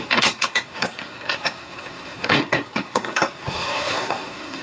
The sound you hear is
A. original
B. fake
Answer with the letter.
B